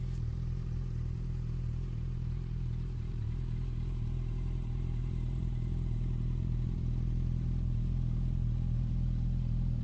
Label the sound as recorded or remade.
remade